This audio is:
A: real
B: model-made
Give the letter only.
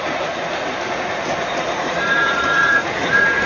B